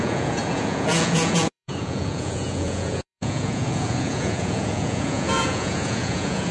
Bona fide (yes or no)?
no